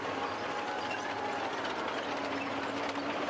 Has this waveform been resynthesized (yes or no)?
no